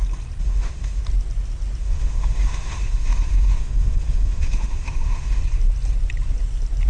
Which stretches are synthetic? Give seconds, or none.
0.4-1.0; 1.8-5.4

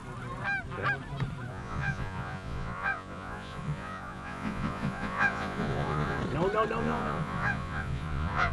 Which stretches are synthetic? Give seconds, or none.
1.5-6.2; 6.8-8.5

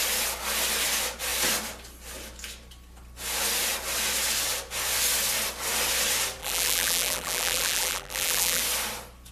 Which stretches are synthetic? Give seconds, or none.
6.4-8.6